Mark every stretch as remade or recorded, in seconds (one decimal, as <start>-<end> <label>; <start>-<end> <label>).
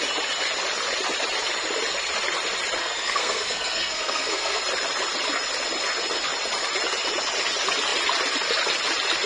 0.0-2.8 recorded; 2.8-4.6 remade; 4.6-9.3 recorded